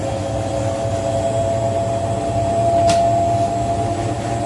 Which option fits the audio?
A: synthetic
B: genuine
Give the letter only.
B